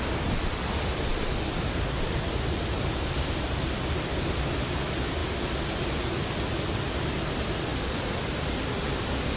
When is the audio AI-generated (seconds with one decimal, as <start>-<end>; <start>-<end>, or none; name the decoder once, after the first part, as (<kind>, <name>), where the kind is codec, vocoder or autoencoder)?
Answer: none